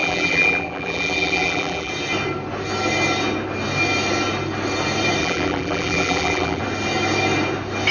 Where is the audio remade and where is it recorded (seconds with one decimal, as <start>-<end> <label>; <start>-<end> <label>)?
0.0-1.9 remade; 1.9-5.2 recorded; 5.2-6.6 remade; 6.6-7.9 recorded